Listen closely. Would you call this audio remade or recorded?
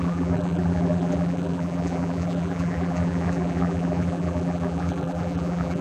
remade